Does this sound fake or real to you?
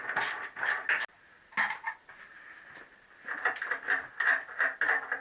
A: real